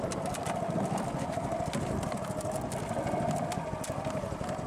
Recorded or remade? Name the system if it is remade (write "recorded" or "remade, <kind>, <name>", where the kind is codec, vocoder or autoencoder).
recorded